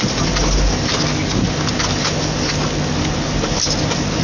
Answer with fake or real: real